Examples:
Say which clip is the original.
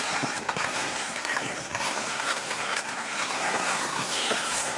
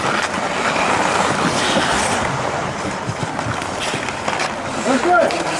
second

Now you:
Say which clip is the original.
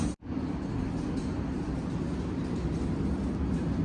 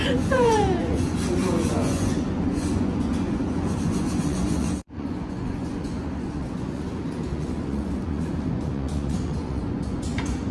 first